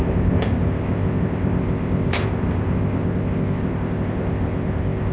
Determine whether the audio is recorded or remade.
remade